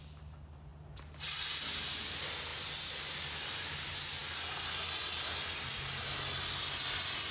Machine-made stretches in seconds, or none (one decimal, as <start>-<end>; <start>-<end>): none